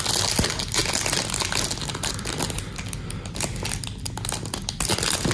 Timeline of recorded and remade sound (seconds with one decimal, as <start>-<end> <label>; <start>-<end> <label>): 0.0-5.3 recorded